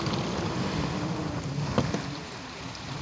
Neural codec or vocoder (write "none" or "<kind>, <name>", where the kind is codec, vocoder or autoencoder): vocoder, BigVGAN v2